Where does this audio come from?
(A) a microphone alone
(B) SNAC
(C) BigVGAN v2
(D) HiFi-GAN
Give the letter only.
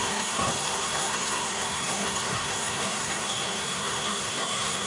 B